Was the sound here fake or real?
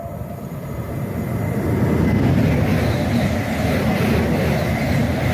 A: real